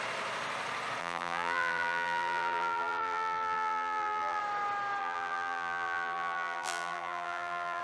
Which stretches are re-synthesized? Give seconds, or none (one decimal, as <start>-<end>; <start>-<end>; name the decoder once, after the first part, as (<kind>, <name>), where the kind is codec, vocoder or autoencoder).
1.0-4.4 (vocoder, BigVGAN v2); 5.0-7.8